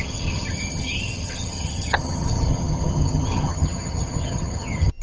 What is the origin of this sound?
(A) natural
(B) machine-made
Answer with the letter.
B